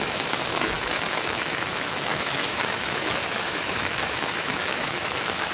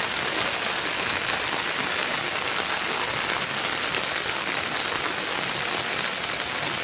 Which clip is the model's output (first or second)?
first